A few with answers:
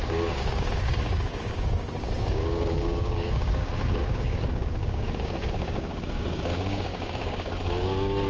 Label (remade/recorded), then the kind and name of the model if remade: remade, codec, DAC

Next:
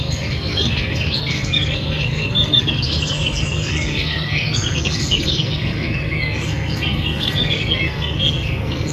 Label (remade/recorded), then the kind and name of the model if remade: remade, codec, SNAC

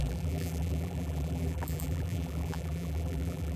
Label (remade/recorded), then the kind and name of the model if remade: remade, vocoder, BigVGAN v2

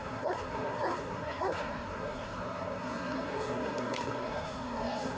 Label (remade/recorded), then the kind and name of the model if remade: remade, codec, SNAC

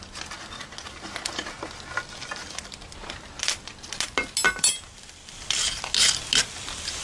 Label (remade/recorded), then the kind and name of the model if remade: recorded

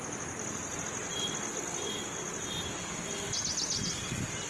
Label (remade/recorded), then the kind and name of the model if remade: recorded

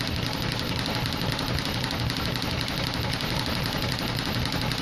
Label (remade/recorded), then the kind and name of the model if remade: recorded